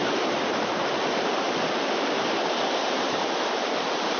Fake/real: fake